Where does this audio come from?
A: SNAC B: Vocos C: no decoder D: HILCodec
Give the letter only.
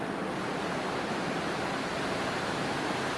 C